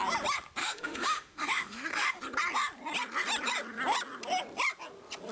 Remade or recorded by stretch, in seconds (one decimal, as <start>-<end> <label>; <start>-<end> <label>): 0.0-0.6 recorded; 0.6-2.2 remade; 2.2-5.3 recorded